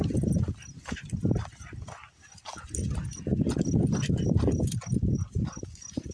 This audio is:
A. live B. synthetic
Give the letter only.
B